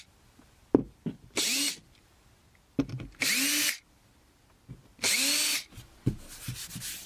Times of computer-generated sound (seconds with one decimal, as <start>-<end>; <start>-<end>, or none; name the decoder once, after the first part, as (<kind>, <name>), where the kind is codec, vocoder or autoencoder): none